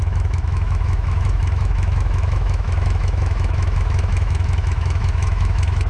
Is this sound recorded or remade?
remade